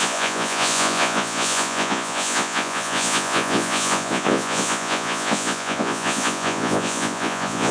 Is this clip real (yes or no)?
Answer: no